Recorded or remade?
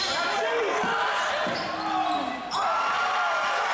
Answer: recorded